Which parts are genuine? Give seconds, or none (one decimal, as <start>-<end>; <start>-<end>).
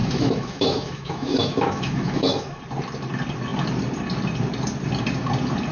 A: 2.6-5.7